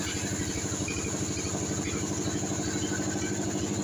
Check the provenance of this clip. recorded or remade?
recorded